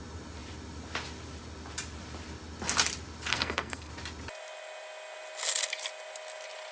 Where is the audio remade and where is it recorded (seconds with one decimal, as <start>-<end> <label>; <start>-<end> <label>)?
0.0-3.3 recorded; 3.3-3.9 remade; 3.9-6.7 recorded